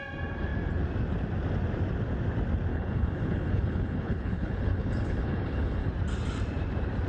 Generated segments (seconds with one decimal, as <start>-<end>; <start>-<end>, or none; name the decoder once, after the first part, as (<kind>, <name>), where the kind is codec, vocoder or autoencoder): 2.7-5.9 (codec, HILCodec)